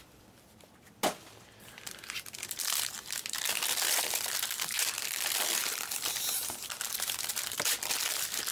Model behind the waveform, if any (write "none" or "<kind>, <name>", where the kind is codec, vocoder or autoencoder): vocoder, BigVGAN v2